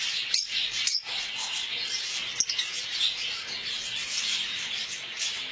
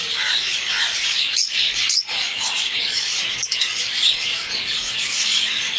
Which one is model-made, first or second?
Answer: second